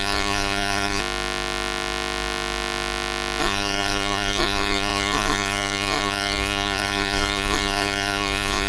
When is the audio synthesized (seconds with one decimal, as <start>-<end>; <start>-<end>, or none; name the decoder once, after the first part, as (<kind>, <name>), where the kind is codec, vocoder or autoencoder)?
0.0-1.0 (codec, SNAC); 3.4-8.7